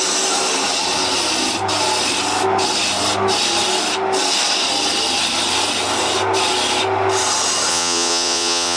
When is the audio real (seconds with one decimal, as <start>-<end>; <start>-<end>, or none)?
0.0-7.7

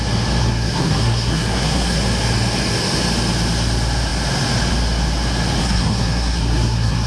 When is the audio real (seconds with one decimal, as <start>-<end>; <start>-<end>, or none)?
0.0-0.4; 2.0-5.6